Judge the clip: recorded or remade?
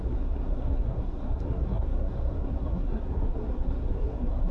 remade